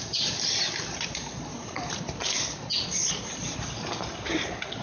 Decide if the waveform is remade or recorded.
recorded